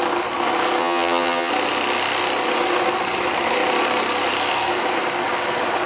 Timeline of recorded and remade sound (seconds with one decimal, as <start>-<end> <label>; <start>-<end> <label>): 0.0-0.8 recorded; 0.8-1.5 remade; 1.5-5.9 recorded